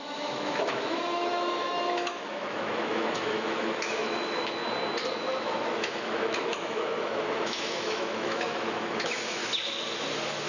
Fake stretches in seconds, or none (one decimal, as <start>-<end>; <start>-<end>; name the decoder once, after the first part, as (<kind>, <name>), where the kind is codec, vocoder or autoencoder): 0.0-4.6 (autoencoder, DAC-VAE); 5.2-9.4